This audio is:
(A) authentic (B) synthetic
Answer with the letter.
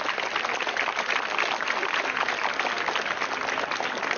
A